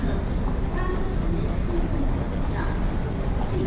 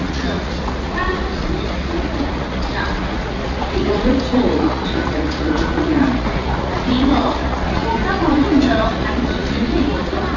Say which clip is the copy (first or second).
second